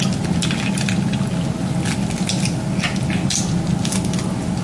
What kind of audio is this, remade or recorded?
recorded